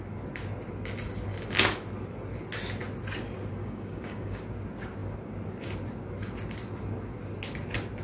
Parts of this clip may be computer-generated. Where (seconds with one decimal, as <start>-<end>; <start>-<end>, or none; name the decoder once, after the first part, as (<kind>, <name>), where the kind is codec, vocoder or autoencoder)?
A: 3.6-4.4 (codec, DAC)